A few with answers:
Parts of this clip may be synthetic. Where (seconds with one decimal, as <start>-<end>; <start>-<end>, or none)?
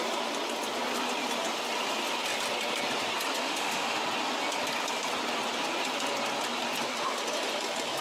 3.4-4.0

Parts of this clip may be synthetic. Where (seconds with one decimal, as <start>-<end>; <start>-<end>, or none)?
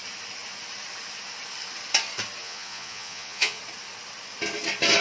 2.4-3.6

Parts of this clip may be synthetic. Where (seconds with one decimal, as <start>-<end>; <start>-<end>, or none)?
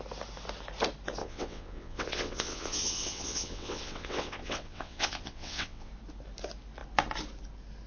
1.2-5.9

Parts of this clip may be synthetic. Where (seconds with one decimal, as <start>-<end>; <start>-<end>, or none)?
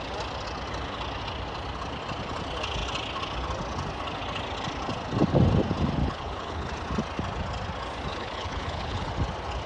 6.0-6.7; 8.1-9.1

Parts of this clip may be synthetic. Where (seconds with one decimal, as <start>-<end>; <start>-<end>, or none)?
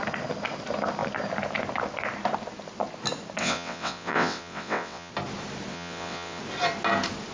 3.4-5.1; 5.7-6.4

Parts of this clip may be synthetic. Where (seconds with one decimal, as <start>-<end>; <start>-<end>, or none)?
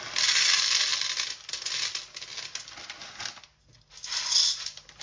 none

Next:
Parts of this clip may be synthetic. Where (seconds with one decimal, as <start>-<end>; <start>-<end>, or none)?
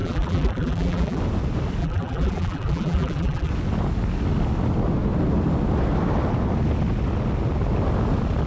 0.0-1.2; 1.8-3.5